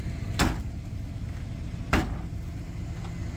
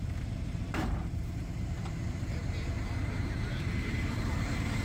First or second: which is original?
first